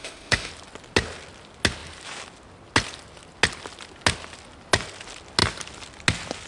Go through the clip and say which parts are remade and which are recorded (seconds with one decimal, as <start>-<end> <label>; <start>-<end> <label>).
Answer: 0.0-0.5 remade; 0.5-6.5 recorded